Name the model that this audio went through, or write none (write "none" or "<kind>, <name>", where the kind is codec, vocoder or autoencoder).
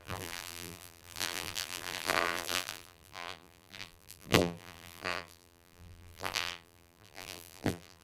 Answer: vocoder, BigVGAN v2